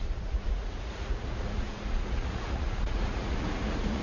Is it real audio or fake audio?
fake